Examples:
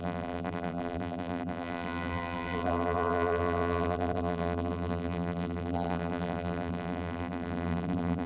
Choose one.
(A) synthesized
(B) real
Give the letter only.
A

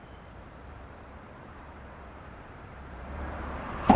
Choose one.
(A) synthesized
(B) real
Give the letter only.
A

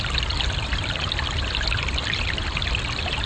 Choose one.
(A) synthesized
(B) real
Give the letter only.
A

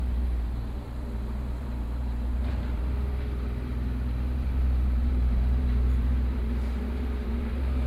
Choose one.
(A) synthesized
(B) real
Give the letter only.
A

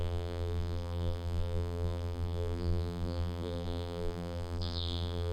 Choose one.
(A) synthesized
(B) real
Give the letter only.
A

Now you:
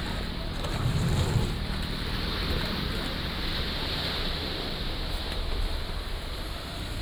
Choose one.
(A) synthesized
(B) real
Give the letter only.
A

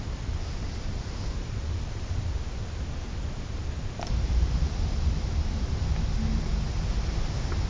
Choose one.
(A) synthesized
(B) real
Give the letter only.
A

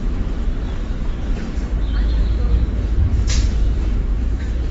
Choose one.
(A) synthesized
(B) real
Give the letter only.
A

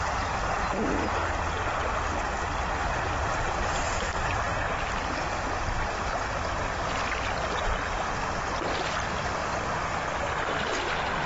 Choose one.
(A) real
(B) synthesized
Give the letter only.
A